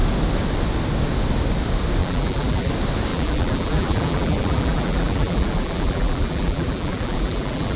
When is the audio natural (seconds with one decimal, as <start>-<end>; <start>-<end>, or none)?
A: 0.0-2.0; 2.7-3.1